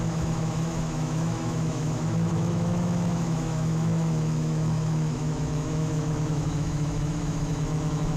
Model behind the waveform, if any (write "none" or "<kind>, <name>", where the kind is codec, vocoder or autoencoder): autoencoder, DAC-VAE